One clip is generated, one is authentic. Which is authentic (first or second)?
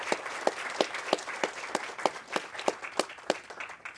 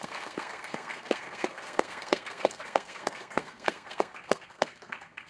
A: first